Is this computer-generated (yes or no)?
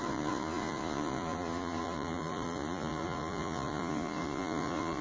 yes